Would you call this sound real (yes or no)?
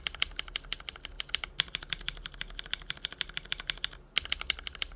yes